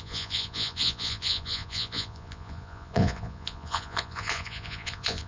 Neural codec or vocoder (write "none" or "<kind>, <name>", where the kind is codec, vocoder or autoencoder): vocoder, Vocos